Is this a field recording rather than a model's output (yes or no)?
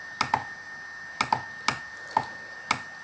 yes